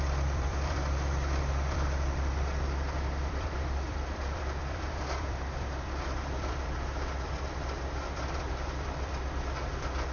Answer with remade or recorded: remade